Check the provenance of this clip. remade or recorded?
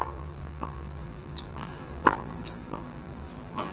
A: remade